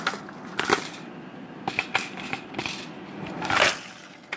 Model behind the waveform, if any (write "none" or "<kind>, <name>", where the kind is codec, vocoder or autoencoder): none